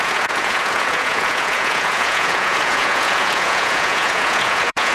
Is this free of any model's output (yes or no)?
no